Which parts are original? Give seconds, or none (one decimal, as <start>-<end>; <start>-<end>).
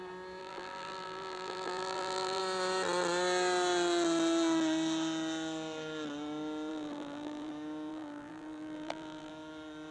0.0-0.4; 2.4-6.7; 7.5-7.9; 9.3-9.9